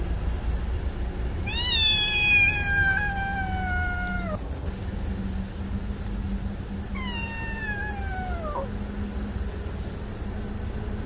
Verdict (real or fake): real